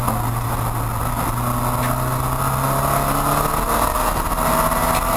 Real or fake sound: real